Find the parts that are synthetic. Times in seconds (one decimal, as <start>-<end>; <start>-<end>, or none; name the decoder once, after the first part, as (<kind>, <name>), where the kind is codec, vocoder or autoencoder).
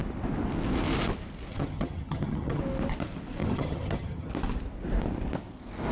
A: 1.5-2.6 (vocoder, HiFi-GAN); 3.4-4.3